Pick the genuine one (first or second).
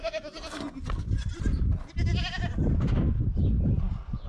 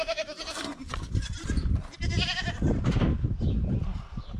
first